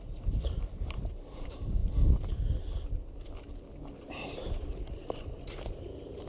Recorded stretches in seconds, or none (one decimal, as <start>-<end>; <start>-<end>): 1.8-4.6